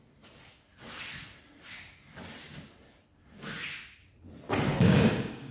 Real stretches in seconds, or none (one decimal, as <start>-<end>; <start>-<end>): 0.0-4.7